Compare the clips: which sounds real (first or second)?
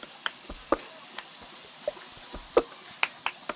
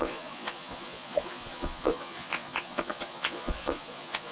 first